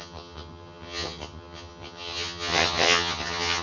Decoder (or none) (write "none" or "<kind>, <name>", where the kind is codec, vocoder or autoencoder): vocoder, HiFi-GAN